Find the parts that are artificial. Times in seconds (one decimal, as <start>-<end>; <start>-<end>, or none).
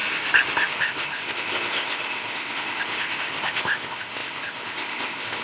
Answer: 0.7-5.4